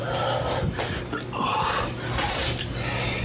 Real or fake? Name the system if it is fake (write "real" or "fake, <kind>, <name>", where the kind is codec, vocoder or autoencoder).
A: real